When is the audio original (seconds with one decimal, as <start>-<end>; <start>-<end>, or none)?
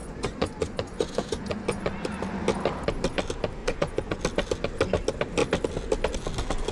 1.9-3.6; 4.2-6.7